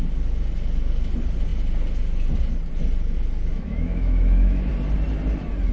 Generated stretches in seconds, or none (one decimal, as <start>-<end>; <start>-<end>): 3.5-4.7